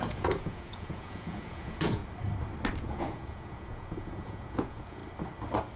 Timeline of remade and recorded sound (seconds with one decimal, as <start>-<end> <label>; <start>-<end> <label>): 0.0-2.0 remade; 2.0-2.8 recorded; 2.8-5.0 remade; 5.0-5.8 recorded